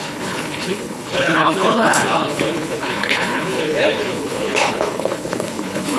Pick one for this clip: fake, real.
fake